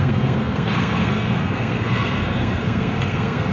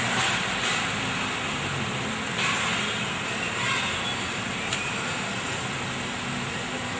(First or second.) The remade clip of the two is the first